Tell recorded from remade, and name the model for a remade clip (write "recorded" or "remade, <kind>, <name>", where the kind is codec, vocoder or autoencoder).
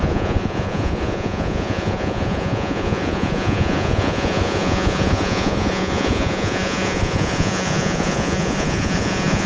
remade, vocoder, Vocos